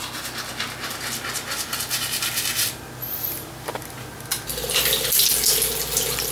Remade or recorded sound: recorded